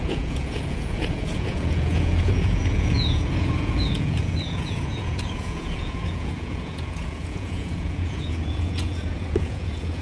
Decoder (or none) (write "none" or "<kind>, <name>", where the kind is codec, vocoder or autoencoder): vocoder, Vocos